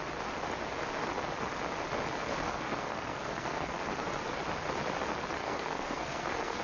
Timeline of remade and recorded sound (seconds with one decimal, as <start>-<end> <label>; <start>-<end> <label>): 0.0-2.2 recorded; 2.2-4.1 remade; 4.1-5.4 recorded; 5.4-6.6 remade